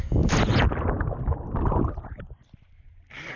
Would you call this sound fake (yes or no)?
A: no